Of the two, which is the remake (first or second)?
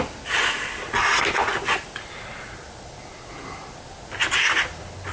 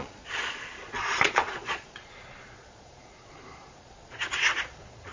second